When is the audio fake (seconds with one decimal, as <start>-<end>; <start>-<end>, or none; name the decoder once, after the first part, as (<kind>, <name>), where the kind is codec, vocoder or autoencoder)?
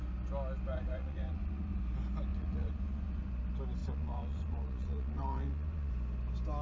0.7-1.8 (vocoder, Vocos); 2.3-3.3; 3.8-5.9